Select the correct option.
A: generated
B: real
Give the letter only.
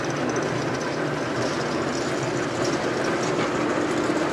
B